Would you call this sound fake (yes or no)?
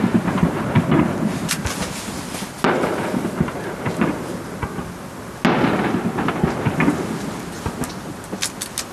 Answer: no